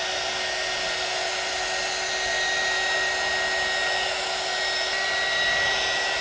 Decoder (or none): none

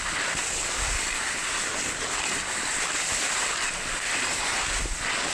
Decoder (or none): none